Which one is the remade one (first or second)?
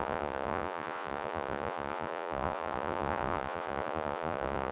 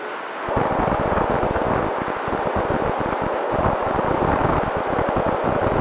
first